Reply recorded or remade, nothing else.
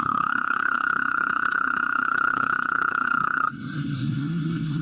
remade